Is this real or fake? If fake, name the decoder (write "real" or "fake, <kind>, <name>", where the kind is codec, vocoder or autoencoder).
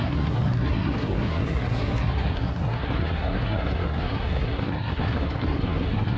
fake, codec, SNAC